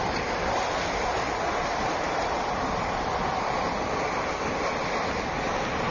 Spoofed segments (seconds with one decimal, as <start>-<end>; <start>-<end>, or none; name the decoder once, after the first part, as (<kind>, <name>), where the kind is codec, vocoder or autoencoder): none